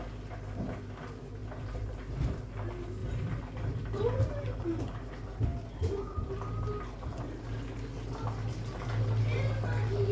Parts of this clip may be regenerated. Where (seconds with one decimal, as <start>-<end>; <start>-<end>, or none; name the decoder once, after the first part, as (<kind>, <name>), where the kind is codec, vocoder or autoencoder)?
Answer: 1.4-2.0 (vocoder, BigVGAN v2); 3.0-4.0